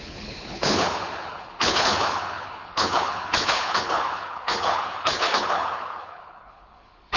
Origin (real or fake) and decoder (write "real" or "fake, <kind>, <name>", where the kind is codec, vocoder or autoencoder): fake, codec, HILCodec